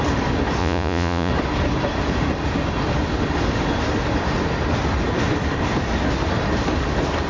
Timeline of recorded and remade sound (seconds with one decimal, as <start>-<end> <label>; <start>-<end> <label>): 0.0-0.6 recorded; 0.6-1.3 remade; 1.3-7.3 recorded